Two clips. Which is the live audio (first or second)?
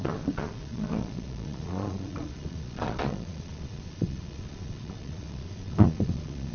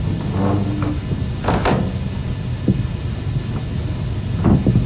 second